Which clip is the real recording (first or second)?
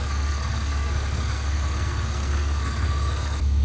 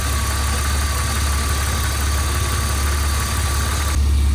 second